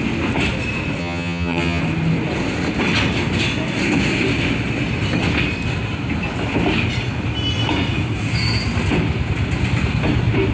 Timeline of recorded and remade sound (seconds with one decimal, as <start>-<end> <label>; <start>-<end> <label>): 0.0-1.0 recorded; 1.0-1.8 remade; 1.8-10.5 recorded